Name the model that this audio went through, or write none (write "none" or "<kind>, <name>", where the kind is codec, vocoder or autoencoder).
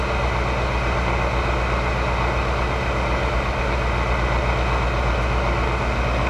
none